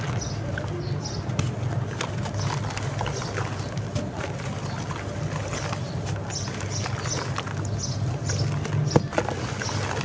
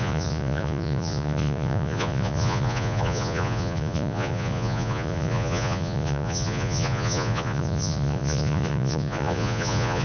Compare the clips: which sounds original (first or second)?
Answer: first